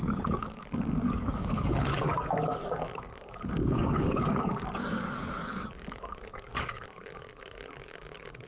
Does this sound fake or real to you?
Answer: fake